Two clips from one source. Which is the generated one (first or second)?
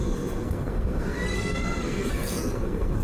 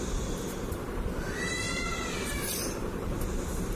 first